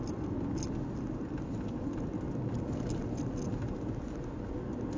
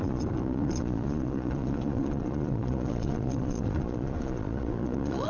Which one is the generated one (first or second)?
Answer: second